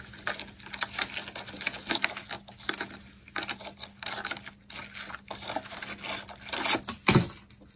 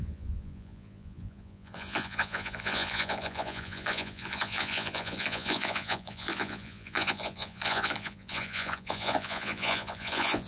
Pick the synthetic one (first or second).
second